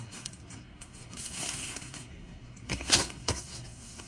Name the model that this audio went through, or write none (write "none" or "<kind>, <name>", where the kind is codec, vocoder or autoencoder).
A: codec, SNAC